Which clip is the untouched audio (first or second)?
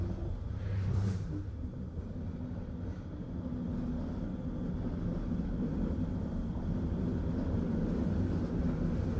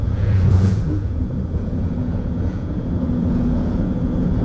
first